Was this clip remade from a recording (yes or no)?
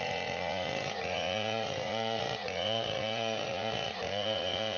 yes